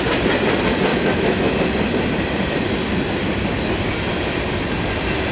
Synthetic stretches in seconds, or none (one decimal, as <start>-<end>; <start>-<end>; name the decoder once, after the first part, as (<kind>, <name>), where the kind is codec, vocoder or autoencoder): 0.9-1.5 (autoencoder, DAC-VAE)